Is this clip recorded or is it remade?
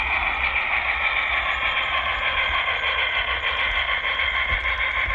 recorded